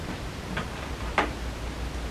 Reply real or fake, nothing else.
fake